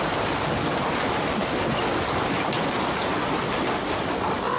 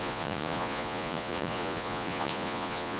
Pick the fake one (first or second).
second